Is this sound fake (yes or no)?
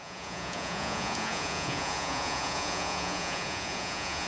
yes